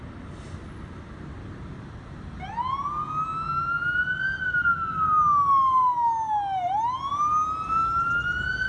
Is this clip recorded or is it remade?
recorded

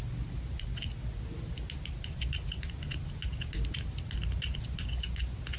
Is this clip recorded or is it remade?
recorded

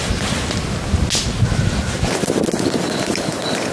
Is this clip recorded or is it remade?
recorded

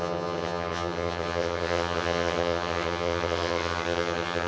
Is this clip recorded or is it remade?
remade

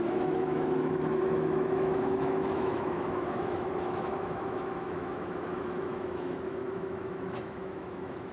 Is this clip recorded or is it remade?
remade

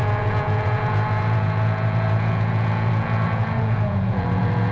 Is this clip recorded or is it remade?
remade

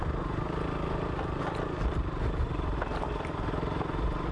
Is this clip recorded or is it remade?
recorded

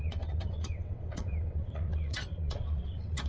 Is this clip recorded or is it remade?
remade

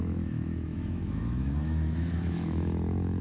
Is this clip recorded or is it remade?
remade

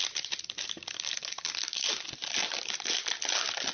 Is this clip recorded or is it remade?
recorded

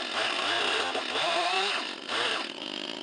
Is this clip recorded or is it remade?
recorded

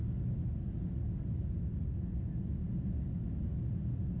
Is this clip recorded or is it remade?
recorded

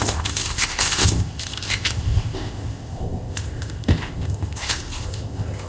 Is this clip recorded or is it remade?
remade